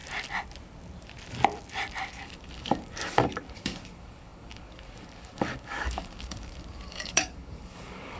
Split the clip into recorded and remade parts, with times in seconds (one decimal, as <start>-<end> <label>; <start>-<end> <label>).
0.0-2.2 recorded; 2.2-8.2 remade